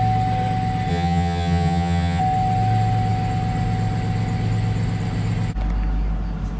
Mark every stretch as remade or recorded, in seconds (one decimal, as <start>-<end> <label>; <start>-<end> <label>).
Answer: 0.0-0.9 recorded; 0.9-2.2 remade; 2.2-6.6 recorded